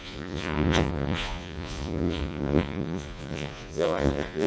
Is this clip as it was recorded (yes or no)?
no